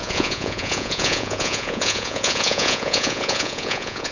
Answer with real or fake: fake